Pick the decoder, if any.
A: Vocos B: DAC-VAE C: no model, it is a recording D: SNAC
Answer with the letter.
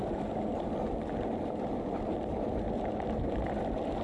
C